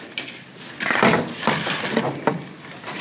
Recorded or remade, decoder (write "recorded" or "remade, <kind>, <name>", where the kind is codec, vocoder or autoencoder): recorded